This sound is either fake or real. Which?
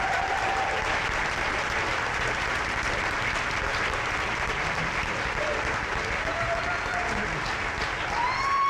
fake